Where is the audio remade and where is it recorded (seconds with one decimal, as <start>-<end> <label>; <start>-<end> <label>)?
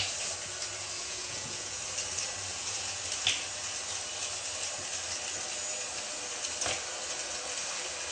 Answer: 0.0-1.0 recorded; 1.0-1.8 remade; 1.8-2.5 recorded; 2.5-3.0 remade; 3.0-8.1 recorded